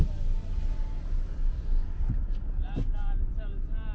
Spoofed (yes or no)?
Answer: no